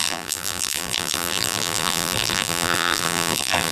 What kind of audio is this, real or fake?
fake